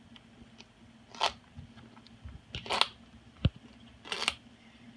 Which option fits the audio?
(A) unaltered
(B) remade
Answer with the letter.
A